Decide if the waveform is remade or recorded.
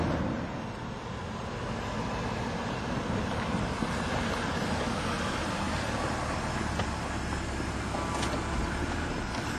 recorded